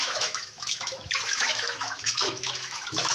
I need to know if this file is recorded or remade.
remade